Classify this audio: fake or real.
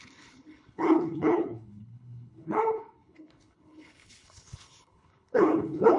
fake